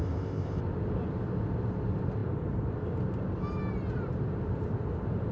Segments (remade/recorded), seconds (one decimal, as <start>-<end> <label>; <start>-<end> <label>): 0.0-0.6 remade; 0.6-5.3 recorded